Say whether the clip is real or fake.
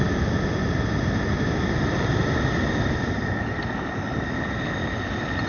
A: real